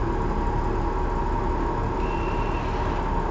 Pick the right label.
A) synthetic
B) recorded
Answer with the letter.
B